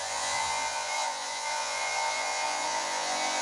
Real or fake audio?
fake